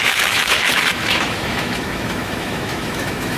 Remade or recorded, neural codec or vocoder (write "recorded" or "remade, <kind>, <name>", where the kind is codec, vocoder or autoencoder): remade, autoencoder, DAC-VAE